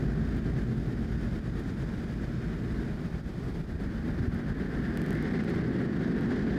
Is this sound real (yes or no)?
yes